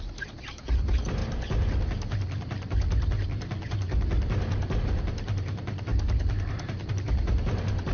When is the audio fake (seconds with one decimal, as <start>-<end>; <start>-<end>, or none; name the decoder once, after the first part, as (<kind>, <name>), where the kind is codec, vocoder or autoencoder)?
0.0-1.2 (vocoder, BigVGAN v2); 4.8-5.9; 6.9-7.9